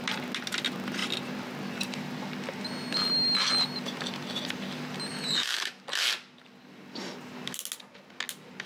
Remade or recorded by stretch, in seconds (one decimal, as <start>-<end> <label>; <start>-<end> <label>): 0.0-5.1 recorded; 5.1-5.8 remade; 5.8-8.7 recorded